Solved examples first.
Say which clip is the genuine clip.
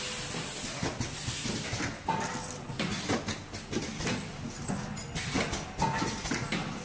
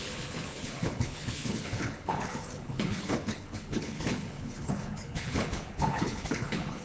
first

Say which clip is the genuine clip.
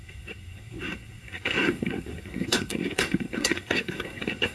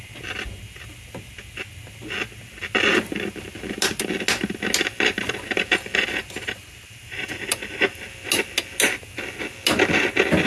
second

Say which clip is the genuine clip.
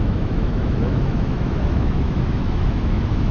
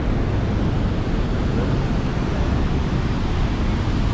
second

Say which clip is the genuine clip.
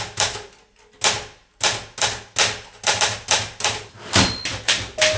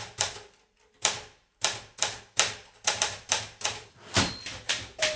first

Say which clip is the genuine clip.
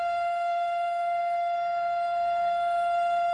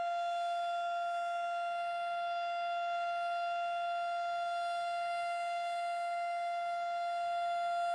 second